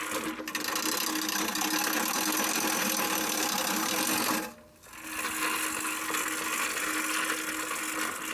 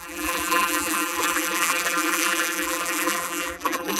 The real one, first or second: first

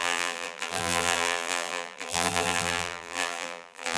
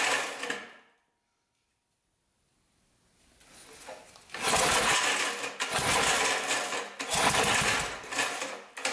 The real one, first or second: second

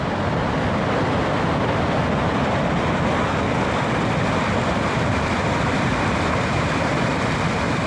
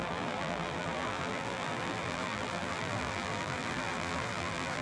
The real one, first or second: first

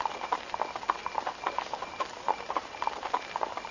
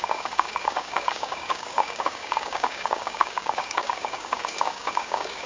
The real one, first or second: first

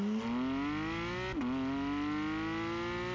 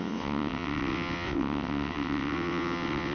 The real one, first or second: first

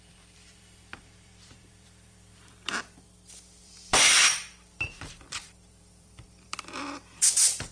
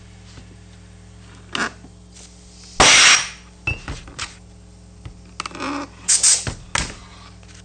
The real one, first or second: second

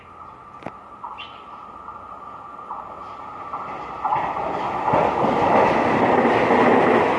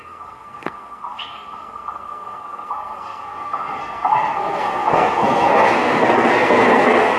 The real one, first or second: first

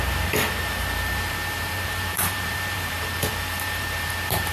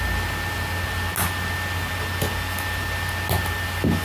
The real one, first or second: second